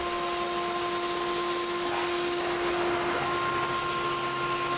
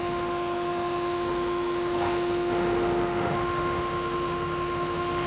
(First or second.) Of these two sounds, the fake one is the second